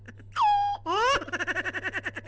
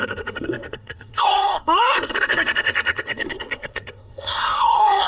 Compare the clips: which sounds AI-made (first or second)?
second